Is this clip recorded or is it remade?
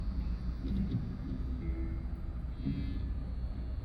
recorded